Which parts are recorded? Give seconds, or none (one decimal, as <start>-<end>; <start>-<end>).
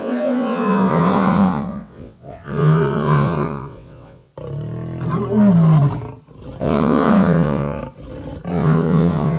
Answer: 4.3-6.6; 7.8-8.5